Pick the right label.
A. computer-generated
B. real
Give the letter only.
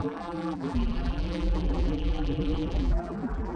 A